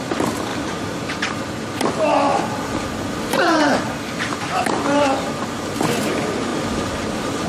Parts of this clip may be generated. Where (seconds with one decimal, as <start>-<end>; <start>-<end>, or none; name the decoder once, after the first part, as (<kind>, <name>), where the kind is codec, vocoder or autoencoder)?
0.5-1.1 (vocoder, BigVGAN v2)

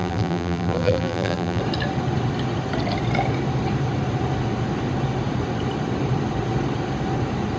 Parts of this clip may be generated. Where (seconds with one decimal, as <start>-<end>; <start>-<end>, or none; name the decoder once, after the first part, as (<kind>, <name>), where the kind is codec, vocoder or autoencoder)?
0.0-1.6 (vocoder, BigVGAN v2)

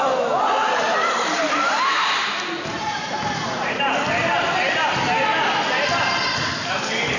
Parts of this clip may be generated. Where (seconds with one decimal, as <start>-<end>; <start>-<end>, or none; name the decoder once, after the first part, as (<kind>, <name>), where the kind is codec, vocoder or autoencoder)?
0.0-0.6 (vocoder, BigVGAN v2); 1.5-5.3; 5.9-7.2

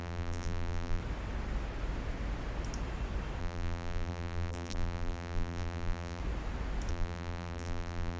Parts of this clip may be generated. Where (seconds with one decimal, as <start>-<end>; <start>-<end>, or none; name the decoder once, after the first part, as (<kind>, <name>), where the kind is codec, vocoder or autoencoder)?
0.0-1.0 (vocoder, BigVGAN v2); 3.4-6.2; 6.9-8.2

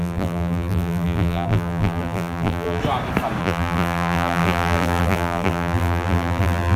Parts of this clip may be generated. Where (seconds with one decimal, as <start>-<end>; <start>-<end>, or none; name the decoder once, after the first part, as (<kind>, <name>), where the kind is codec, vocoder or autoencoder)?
0.0-2.8 (vocoder, BigVGAN v2); 3.4-6.8

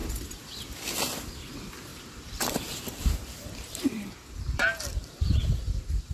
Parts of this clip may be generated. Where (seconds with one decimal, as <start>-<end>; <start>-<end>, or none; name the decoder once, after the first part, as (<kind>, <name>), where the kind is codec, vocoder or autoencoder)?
0.0-1.1 (vocoder, BigVGAN v2); 1.9-5.5